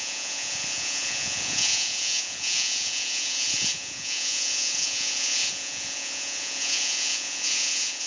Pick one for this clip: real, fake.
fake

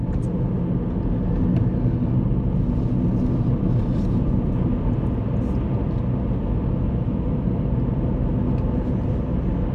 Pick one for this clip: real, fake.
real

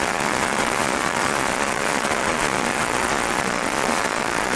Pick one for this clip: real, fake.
fake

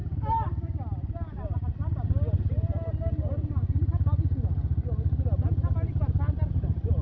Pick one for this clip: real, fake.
real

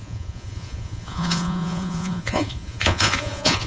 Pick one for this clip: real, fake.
fake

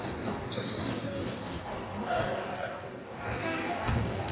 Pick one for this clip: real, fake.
fake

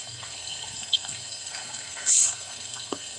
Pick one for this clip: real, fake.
fake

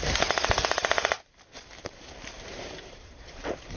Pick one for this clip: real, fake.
fake